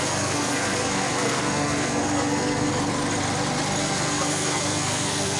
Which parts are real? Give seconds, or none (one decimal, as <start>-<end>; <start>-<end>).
2.7-3.8

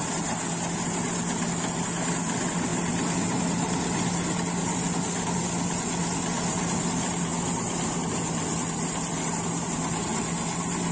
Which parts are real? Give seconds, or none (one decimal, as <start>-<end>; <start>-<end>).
0.0-10.9

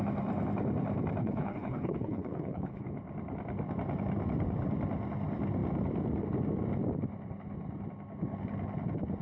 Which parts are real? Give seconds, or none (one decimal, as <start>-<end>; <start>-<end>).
0.0-1.2; 2.8-9.2

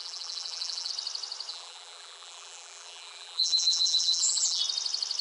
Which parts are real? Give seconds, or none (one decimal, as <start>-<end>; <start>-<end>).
0.9-1.5; 4.6-5.2

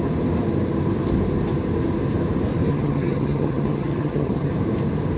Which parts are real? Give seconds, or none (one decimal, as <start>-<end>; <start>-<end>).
0.0-2.7; 4.5-5.2